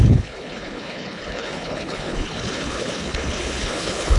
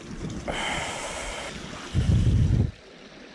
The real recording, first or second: second